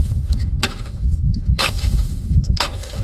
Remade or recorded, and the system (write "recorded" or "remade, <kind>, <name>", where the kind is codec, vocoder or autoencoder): remade, autoencoder, DAC-VAE